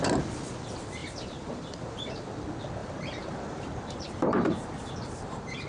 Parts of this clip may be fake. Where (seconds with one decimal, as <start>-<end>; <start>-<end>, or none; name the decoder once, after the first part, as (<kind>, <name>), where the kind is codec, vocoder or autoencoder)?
1.0-2.1 (vocoder, BigVGAN v2); 2.8-5.7